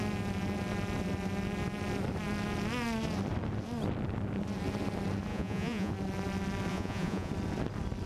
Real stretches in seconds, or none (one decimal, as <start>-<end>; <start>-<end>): 0.0-5.3; 5.9-6.7; 7.3-8.1